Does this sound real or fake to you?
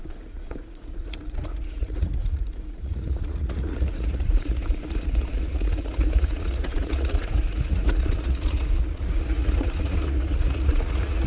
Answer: fake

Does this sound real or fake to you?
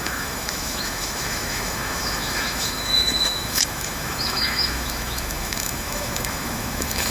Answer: fake